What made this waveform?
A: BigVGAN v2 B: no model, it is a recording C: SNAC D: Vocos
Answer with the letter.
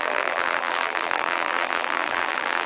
A